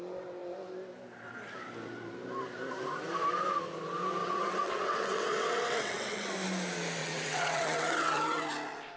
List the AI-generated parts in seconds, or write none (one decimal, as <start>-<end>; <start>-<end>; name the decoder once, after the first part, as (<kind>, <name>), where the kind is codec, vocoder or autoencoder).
4.2-6.3 (vocoder, WaveNeXt); 7.0-8.4